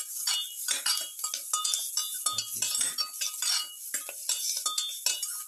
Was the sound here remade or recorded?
recorded